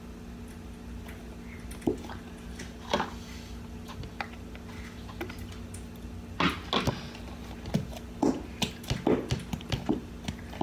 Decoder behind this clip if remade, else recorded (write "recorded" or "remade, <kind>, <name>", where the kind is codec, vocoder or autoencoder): recorded